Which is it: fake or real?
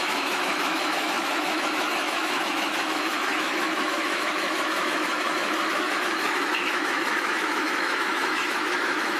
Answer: fake